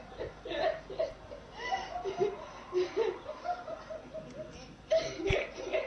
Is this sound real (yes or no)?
yes